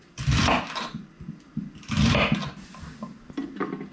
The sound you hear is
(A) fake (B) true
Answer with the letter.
B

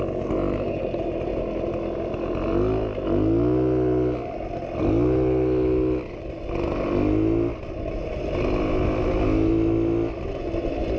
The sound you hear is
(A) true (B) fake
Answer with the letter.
A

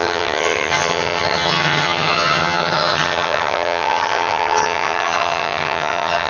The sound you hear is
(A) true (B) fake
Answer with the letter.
B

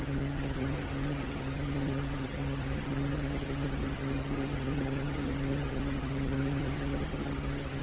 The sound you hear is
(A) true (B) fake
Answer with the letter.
B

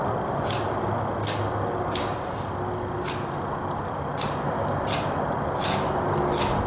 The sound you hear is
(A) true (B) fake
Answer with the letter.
A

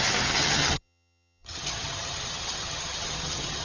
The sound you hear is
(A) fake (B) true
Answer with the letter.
A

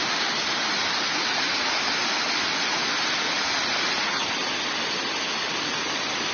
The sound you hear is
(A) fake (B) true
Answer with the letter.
B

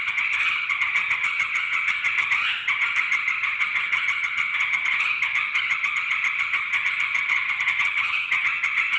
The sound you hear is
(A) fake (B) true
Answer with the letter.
A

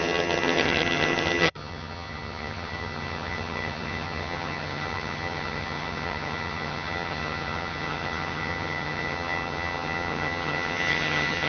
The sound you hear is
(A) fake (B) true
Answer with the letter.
A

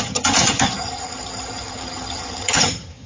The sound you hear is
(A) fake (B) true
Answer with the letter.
A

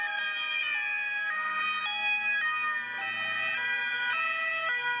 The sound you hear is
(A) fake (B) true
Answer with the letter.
B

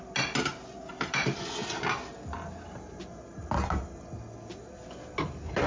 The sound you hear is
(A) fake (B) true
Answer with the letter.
B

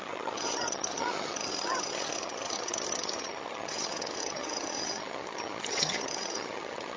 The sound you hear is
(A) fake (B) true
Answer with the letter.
A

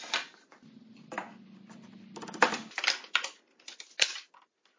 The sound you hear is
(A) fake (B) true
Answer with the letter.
B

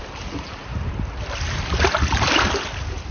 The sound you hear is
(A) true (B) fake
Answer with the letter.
A